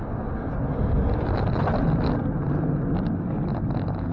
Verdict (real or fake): real